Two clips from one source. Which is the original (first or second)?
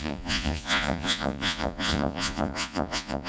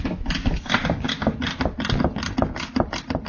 second